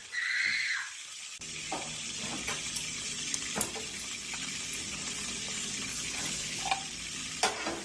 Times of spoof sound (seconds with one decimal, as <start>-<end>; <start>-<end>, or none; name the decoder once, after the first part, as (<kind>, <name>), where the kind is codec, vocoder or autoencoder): 5.9-6.6 (codec, HILCodec)